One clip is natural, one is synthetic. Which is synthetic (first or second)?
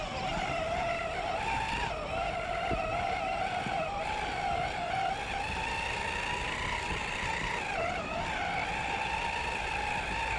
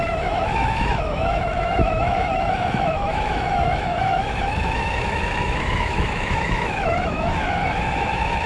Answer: second